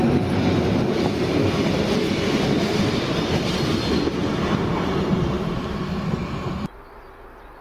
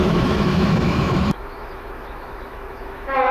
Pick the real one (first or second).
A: first